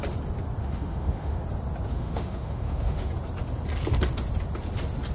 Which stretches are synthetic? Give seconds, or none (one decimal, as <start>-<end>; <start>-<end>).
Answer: 0.6-1.4; 1.9-3.1